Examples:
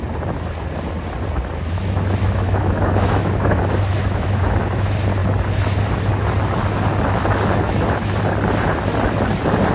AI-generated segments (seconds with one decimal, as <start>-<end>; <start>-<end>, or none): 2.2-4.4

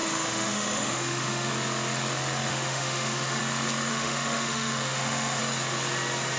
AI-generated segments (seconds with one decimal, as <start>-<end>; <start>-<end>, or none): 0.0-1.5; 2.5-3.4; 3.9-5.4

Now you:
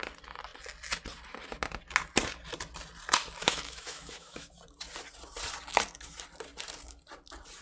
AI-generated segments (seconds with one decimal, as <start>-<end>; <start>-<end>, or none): 3.4-4.5

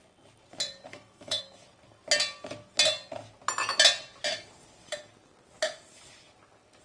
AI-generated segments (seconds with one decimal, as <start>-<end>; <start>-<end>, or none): 0.9-1.4

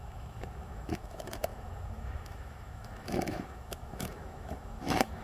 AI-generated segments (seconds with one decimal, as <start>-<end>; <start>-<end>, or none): 0.0-5.2

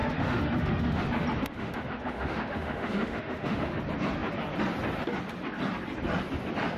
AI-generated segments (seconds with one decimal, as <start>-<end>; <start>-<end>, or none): 0.0-1.0; 1.4-3.8